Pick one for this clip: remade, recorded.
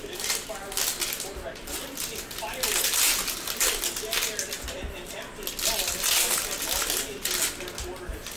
recorded